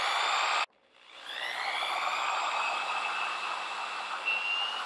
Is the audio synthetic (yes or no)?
no